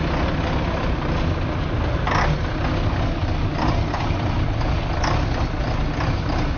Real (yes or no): yes